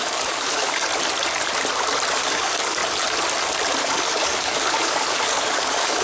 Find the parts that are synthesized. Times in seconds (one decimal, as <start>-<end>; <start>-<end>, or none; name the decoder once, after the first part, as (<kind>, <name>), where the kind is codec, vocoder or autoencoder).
0.0-0.9 (codec, DAC); 2.1-2.8; 3.8-6.0